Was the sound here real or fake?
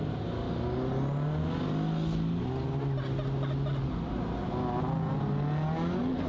real